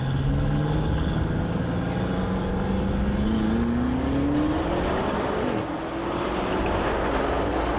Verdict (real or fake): real